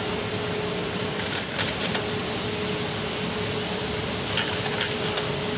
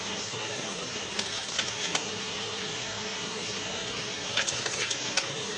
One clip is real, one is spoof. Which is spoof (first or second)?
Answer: second